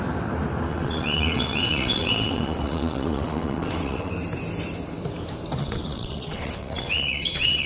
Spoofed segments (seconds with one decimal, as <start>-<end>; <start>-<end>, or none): 0.7-4.1; 5.6-7.7